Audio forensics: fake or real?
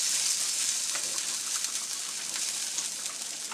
real